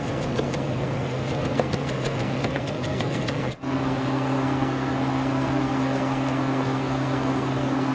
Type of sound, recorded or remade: remade